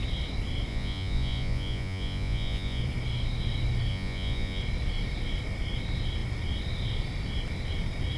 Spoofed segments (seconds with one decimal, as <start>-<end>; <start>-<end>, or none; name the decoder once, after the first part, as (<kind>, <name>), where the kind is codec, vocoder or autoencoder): 0.7-2.8 (vocoder, Vocos); 3.9-4.6